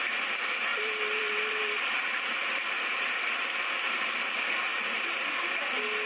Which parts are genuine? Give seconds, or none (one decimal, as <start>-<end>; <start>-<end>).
4.7-6.1